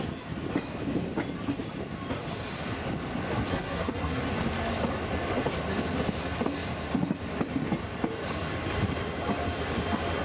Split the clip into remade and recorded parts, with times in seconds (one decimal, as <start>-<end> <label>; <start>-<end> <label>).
0.0-3.5 recorded; 3.5-4.2 remade; 4.2-10.2 recorded